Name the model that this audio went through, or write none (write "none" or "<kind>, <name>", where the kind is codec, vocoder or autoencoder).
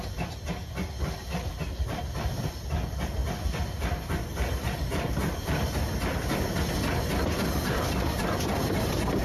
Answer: none